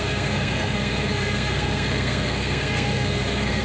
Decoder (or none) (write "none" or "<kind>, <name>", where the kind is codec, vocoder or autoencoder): codec, SNAC